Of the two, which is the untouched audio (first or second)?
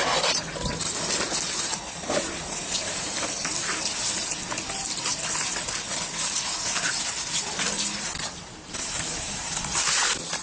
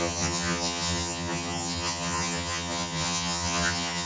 first